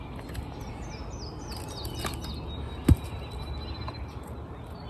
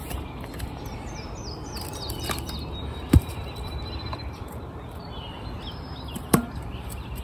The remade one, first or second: second